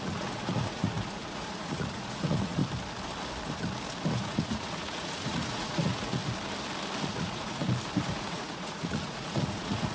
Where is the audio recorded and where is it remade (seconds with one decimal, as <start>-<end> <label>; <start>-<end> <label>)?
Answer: 0.0-2.6 remade; 2.6-4.1 recorded; 4.1-6.2 remade; 6.2-7.1 recorded; 7.1-7.6 remade; 7.6-8.1 recorded; 8.1-9.9 remade